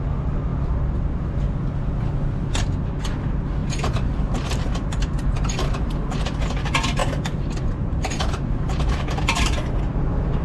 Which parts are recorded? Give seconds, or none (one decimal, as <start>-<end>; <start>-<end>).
0.0-3.6; 6.2-7.0; 9.8-10.4